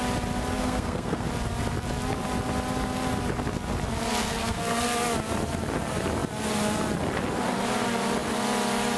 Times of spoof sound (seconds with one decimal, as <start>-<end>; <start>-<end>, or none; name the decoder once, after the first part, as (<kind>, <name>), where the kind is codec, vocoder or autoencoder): 0.6-1.3 (codec, SNAC); 4.2-4.8